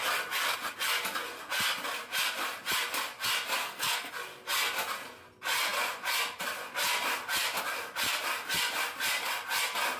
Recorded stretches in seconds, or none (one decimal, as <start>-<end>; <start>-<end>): 0.0-3.6; 4.1-10.0